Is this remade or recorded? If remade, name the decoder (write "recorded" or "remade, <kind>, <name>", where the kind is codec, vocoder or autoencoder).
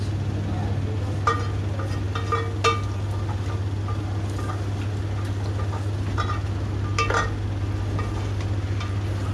recorded